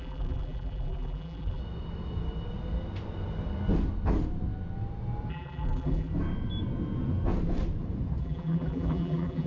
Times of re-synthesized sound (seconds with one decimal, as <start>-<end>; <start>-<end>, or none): 0.0-1.6; 5.3-6.1; 8.2-9.5